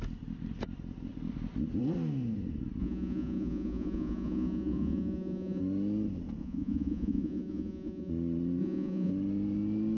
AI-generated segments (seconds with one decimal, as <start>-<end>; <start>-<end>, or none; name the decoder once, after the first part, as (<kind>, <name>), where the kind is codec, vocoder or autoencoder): 2.8-5.6 (vocoder, Vocos); 6.4-8.1; 8.6-9.1

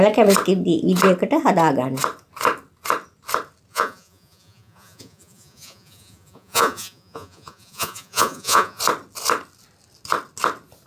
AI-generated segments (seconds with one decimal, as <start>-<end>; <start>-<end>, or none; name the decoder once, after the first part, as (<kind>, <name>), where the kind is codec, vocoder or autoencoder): 3.7-8.8 (vocoder, Vocos)

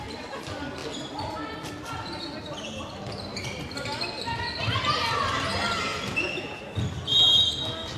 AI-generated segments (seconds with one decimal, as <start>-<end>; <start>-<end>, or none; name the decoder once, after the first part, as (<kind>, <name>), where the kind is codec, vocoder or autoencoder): 5.9-6.6 (vocoder, Vocos)

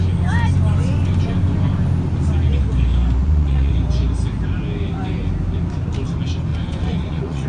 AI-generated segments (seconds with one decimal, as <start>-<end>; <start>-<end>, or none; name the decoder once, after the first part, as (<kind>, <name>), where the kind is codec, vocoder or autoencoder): 3.2-3.7 (vocoder, Vocos); 6.5-7.5

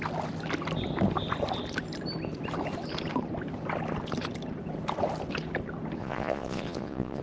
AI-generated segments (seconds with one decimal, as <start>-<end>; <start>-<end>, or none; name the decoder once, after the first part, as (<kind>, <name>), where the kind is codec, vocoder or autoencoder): 6.0-7.2 (vocoder, Vocos)

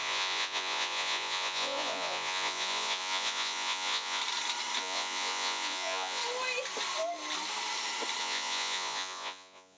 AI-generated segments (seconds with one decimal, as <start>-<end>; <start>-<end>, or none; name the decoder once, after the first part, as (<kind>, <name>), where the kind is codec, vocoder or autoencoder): 0.0-4.2 (vocoder, Vocos); 4.8-6.2; 8.2-9.8